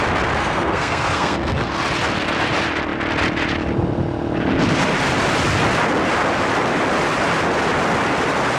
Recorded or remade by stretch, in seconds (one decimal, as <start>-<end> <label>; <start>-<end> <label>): 0.0-0.4 recorded; 0.4-1.7 remade; 1.7-8.6 recorded